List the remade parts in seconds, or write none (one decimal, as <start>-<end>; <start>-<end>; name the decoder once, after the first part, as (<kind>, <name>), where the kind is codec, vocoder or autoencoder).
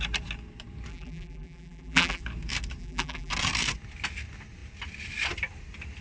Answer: 0.9-2.2 (vocoder, BigVGAN v2); 2.8-3.3